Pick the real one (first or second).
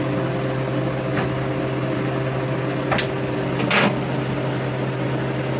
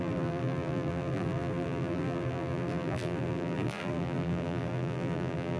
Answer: first